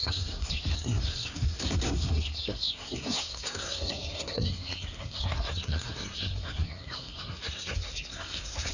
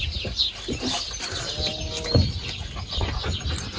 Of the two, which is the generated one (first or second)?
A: first